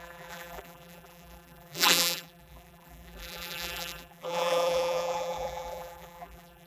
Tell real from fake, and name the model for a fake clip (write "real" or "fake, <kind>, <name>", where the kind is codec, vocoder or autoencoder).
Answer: fake, vocoder, BigVGAN v2